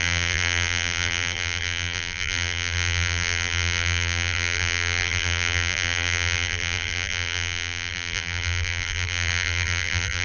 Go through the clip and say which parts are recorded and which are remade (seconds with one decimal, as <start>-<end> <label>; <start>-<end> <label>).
0.0-10.2 remade